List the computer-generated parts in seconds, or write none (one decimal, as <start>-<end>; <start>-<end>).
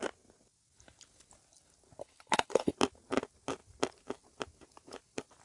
2.0-2.7